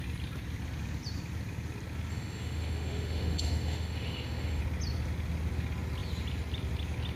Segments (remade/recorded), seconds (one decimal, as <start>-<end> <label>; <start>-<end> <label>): 0.0-2.1 recorded; 2.1-4.6 remade; 4.6-7.2 recorded